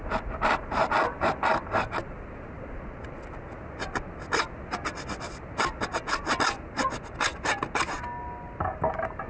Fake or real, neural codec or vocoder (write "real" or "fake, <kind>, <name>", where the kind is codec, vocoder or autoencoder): real